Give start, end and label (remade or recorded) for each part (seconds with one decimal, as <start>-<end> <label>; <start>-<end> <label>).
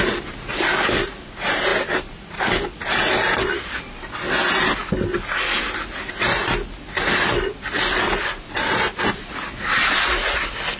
0.0-10.8 recorded